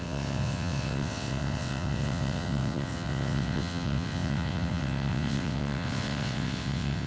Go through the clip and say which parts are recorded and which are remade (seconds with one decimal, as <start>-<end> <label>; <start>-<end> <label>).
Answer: 0.0-7.1 remade